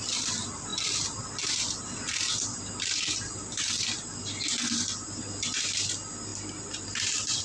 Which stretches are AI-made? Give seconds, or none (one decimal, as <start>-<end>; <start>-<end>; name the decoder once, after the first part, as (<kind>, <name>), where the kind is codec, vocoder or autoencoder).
0.0-7.4 (vocoder, BigVGAN v2)